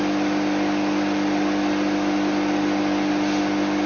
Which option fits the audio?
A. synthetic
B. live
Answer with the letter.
B